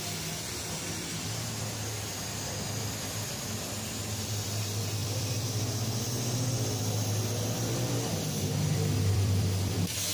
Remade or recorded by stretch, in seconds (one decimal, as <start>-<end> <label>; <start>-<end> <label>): 0.0-5.0 recorded; 5.0-5.5 remade; 5.5-8.8 recorded; 8.8-10.1 remade